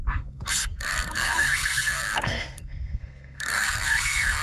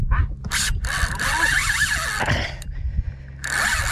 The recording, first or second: second